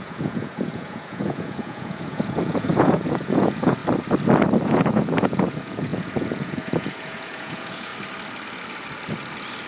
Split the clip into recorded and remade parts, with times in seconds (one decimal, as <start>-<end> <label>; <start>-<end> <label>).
0.0-3.8 remade; 3.8-4.6 recorded; 4.6-7.9 remade; 7.9-9.7 recorded